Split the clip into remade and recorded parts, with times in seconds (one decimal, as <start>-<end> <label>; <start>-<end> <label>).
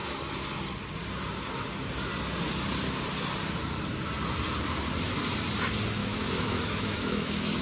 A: 0.0-6.0 recorded; 6.0-7.6 remade